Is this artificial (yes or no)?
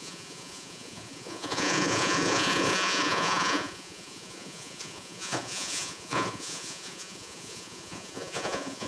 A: yes